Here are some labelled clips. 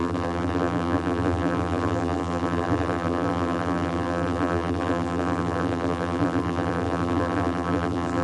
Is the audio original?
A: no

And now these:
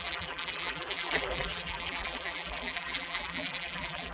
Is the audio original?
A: no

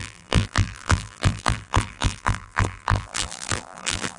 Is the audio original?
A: no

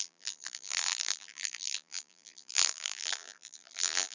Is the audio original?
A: no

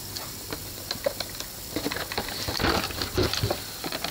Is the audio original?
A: no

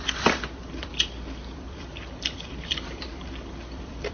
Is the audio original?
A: no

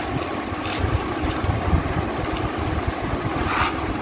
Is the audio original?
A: yes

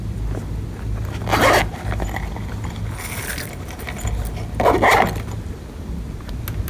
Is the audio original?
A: yes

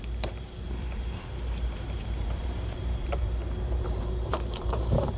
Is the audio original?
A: no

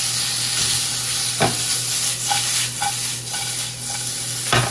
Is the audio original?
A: yes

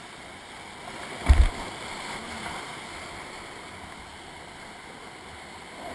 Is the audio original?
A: yes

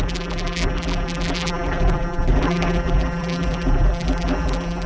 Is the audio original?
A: no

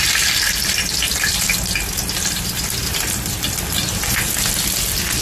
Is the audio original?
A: yes